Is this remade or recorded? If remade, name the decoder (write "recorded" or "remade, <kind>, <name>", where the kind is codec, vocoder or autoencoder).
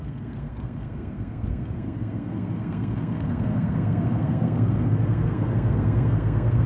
remade, codec, SNAC